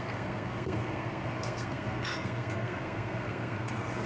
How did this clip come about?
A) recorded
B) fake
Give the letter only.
B